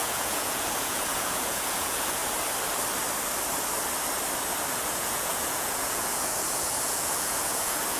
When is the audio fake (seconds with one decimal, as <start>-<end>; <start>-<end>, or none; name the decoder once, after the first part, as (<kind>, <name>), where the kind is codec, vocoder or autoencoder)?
0.0-2.2 (vocoder, Vocos); 4.8-8.0